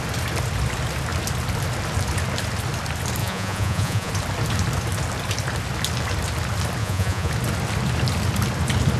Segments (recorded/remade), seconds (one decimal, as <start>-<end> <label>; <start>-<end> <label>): 0.0-3.2 recorded; 3.2-4.1 remade; 4.1-6.8 recorded; 6.8-7.3 remade; 7.3-9.0 recorded